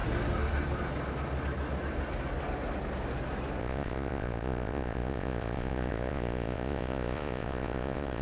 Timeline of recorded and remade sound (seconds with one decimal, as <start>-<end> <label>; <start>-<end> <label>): 0.0-3.6 recorded; 3.6-8.2 remade